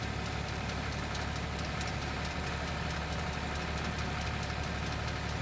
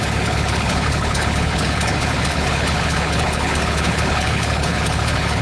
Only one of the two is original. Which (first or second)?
first